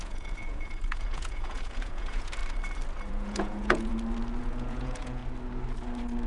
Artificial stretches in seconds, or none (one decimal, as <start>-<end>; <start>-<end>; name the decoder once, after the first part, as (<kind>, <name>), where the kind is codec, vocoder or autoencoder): 0.0-2.4 (vocoder, Vocos); 3.1-3.9; 4.4-5.2